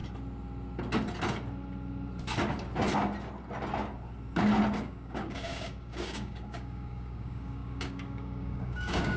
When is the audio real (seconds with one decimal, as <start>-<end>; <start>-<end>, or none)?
0.0-4.8

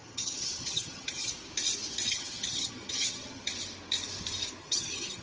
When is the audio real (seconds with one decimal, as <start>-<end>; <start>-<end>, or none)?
1.3-2.1; 3.5-4.6

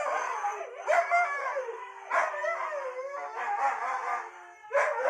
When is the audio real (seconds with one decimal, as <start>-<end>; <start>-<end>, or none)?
0.0-0.5; 1.6-5.1

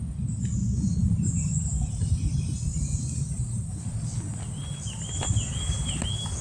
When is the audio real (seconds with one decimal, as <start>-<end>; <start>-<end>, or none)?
0.0-0.6; 1.3-2.7; 3.8-6.4

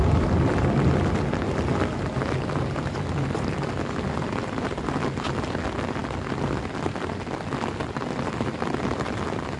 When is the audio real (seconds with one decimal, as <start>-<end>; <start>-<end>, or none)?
0.0-9.6

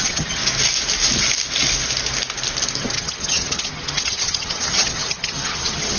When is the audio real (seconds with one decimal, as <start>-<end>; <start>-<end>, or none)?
0.4-2.8

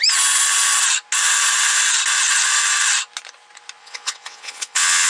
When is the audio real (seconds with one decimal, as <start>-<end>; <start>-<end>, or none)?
0.0-3.8

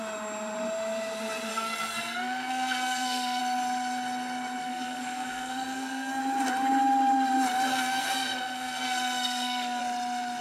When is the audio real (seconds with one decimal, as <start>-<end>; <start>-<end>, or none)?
0.0-1.5; 3.4-4.6; 6.2-7.7; 9.8-10.4